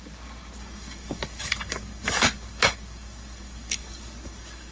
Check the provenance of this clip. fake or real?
fake